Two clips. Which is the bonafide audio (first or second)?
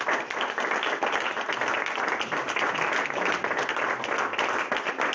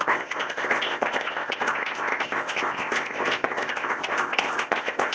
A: first